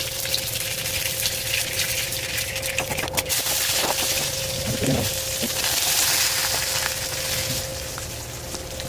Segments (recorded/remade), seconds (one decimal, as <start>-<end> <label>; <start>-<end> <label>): 0.0-1.6 recorded; 1.6-2.4 remade; 2.4-2.9 recorded; 2.9-5.1 remade; 5.1-8.9 recorded